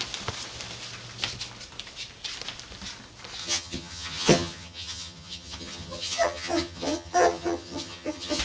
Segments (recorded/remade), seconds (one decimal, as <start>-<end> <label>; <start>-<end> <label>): 0.0-3.4 recorded; 3.4-8.4 remade